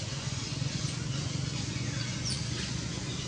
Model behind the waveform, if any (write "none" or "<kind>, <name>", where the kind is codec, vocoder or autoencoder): vocoder, Vocos